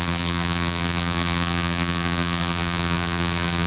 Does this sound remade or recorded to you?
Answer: remade